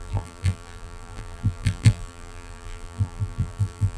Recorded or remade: remade